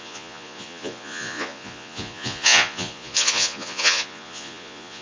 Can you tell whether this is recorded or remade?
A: remade